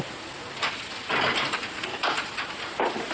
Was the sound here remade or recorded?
recorded